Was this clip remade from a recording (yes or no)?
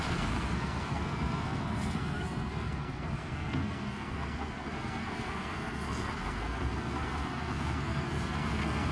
yes